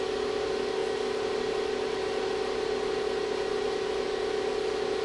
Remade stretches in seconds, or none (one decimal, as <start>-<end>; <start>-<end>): none